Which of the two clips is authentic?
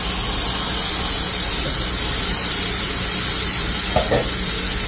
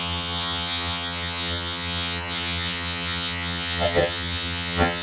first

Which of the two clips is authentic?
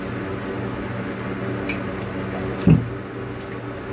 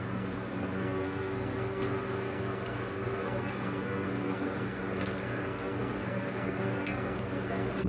first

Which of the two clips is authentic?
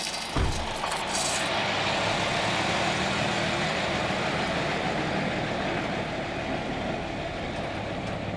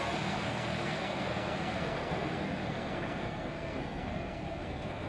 first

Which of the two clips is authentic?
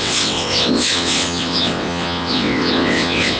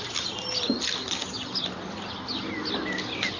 second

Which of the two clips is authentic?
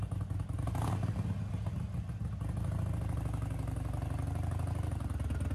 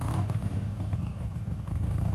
first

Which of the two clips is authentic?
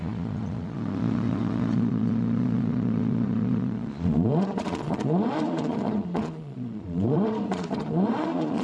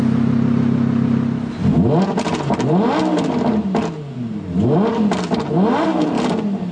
second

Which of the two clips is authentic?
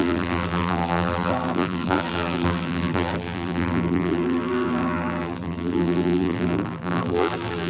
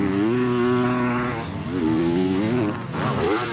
second